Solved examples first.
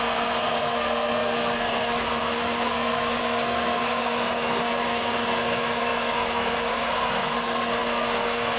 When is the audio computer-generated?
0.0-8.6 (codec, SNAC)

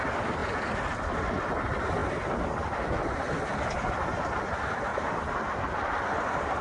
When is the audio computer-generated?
none

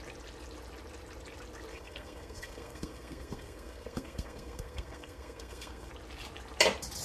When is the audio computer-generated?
1.7-5.9 (codec, SNAC)